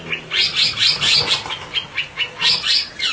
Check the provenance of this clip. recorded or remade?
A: recorded